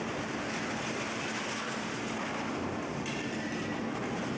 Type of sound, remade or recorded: recorded